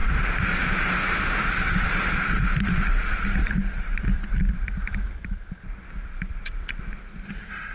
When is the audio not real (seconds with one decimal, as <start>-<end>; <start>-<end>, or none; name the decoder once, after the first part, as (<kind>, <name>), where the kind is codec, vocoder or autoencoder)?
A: 0.0-1.9 (vocoder, BigVGAN v2); 3.4-6.8